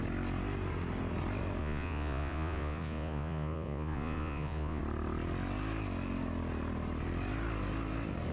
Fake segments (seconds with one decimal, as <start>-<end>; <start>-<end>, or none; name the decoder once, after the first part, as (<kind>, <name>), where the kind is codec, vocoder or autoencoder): 1.6-4.8 (vocoder, Vocos)